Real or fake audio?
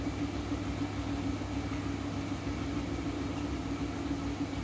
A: real